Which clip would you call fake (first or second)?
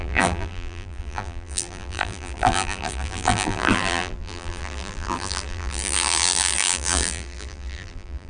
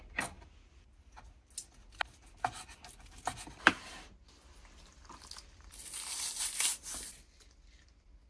first